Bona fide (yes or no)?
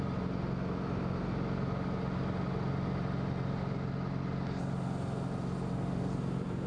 yes